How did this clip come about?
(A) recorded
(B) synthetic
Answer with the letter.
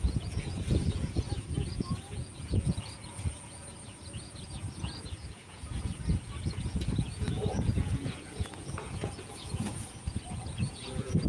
B